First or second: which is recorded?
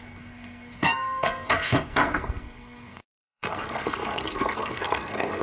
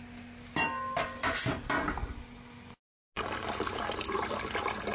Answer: second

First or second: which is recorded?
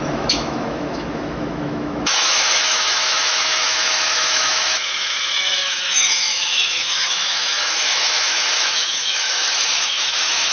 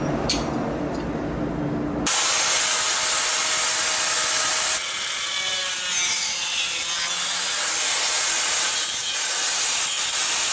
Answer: second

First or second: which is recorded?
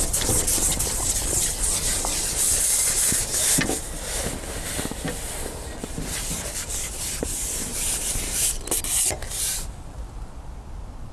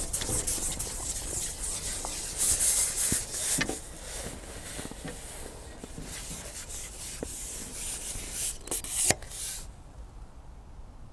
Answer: second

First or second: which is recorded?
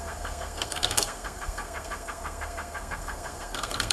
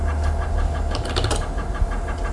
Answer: second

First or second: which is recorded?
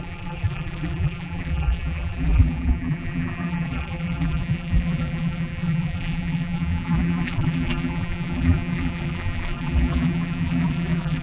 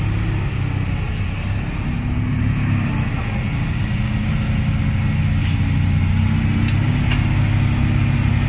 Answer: second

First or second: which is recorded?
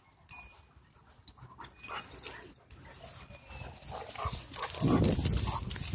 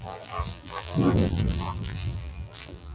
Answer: first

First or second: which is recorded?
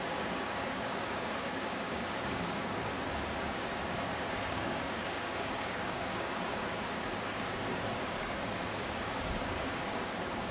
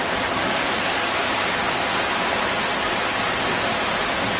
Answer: second